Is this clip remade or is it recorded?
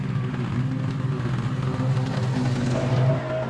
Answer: recorded